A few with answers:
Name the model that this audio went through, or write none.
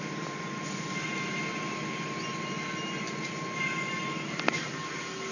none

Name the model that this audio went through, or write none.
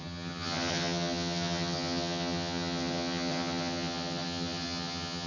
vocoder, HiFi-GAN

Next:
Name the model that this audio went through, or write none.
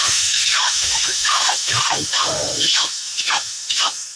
autoencoder, DAC-VAE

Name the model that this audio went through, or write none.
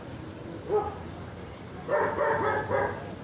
none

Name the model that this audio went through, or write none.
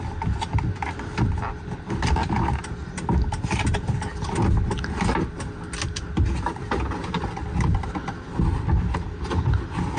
none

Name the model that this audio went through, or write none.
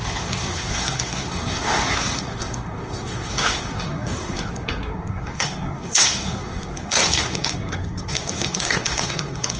codec, SNAC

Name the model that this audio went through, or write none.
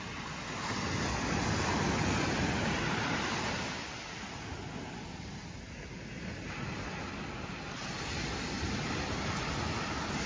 none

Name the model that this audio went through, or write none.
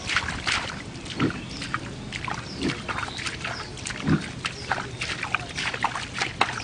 none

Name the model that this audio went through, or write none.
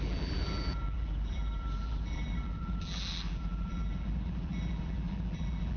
vocoder, BigVGAN v2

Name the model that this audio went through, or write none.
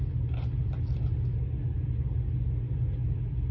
none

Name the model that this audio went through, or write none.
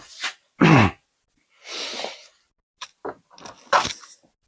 none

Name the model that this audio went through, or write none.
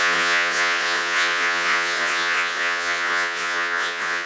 vocoder, Vocos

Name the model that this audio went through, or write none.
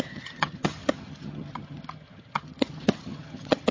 vocoder, HiFi-GAN